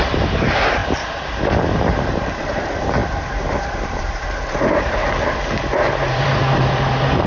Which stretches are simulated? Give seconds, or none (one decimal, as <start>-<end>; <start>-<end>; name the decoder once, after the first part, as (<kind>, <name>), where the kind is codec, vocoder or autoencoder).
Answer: 0.0-0.8 (vocoder, BigVGAN v2); 2.4-5.0; 6.1-7.3